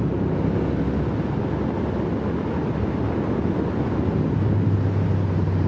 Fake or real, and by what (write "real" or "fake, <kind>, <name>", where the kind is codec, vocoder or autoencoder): real